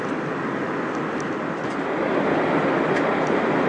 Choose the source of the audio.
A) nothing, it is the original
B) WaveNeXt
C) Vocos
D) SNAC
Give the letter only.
A